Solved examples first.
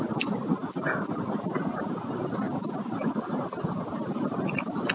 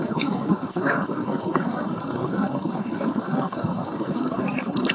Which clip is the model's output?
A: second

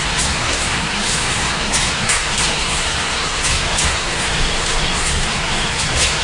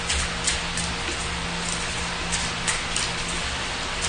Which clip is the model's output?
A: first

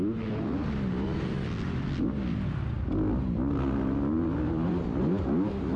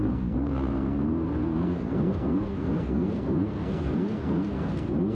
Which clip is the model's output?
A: second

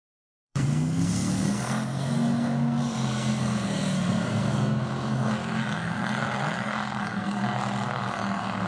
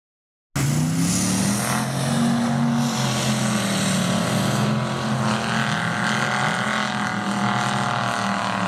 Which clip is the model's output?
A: first